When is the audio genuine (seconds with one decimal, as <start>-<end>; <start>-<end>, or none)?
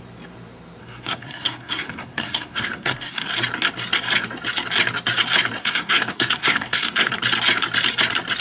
0.0-0.8; 3.3-5.6; 7.1-8.4